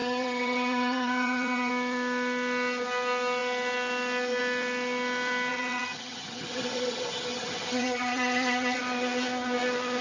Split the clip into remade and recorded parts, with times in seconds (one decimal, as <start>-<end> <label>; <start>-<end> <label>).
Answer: 0.0-1.7 remade; 1.7-5.5 recorded; 5.5-8.8 remade; 8.8-10.0 recorded